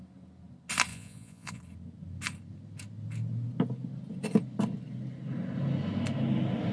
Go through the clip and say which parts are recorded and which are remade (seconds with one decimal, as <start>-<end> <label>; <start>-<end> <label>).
0.0-0.9 recorded; 0.9-1.6 remade; 1.6-6.7 recorded